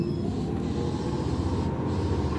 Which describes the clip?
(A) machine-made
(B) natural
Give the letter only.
B